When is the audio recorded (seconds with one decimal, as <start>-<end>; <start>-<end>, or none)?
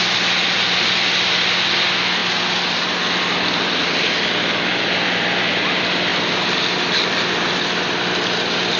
0.0-8.8